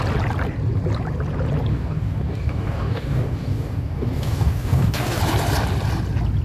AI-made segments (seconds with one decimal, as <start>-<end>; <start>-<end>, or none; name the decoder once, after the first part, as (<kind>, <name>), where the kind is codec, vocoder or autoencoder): 1.7-5.2 (codec, DAC)